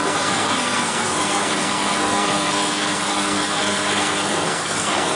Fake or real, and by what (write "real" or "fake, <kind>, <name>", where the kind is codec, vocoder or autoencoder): fake, codec, SNAC